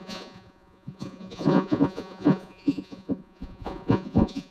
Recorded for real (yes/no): no